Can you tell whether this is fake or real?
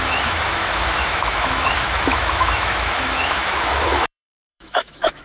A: fake